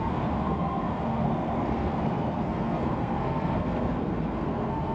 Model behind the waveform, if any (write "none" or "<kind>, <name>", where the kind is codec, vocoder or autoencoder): codec, SNAC